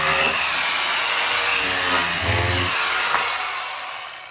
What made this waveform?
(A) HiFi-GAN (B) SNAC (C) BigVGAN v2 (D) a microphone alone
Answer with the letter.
D